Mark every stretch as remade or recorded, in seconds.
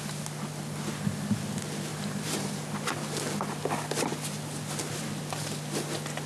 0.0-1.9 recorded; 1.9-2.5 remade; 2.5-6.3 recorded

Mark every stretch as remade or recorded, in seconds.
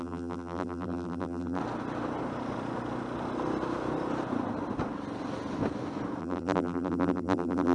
0.0-1.6 remade; 1.6-6.2 recorded; 6.2-7.7 remade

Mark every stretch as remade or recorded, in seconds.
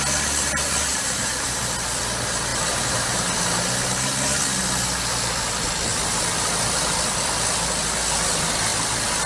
0.0-0.9 recorded; 0.9-1.6 remade; 1.6-2.5 recorded; 2.5-3.2 remade; 3.2-9.3 recorded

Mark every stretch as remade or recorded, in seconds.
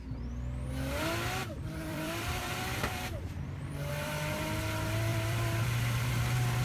0.0-1.4 recorded; 1.4-3.9 remade; 3.9-5.1 recorded; 5.1-6.1 remade; 6.1-6.6 recorded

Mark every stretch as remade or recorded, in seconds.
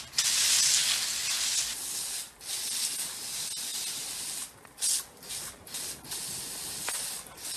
0.0-7.6 recorded